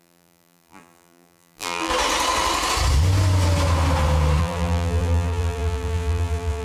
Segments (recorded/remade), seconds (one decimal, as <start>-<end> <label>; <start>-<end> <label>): 0.0-1.9 remade; 1.9-4.4 recorded; 4.4-6.6 remade